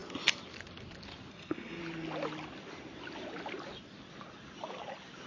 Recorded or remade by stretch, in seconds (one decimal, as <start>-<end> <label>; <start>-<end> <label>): 0.0-1.3 recorded; 1.3-1.8 remade; 1.8-5.3 recorded